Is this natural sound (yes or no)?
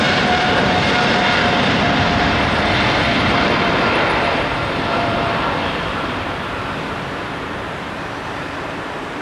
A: no